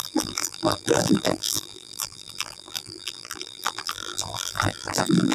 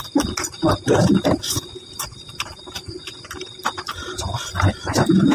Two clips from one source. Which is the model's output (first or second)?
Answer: first